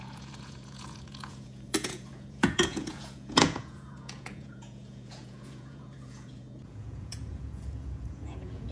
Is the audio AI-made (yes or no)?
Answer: yes